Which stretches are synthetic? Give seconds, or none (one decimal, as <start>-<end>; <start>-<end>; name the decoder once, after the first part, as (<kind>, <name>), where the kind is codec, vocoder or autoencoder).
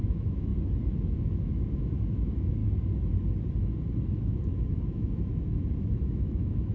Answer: 0.0-0.5 (autoencoder, DAC-VAE); 1.0-2.6; 4.1-6.7